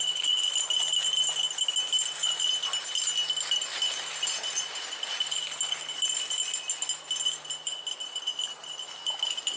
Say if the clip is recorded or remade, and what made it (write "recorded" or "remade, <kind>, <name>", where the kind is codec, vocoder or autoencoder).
recorded